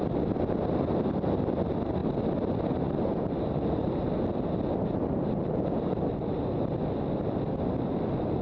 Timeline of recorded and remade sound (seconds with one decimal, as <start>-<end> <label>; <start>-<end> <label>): 0.0-8.4 recorded